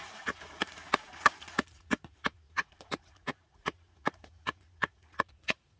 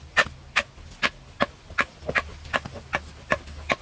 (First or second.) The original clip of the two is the second